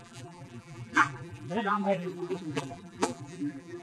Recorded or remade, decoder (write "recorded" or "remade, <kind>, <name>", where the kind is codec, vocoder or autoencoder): remade, vocoder, BigVGAN v2